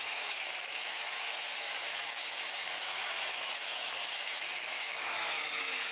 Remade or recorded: remade